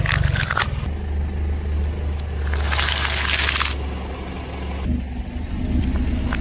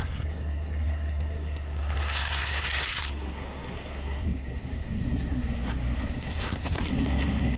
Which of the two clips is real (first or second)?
first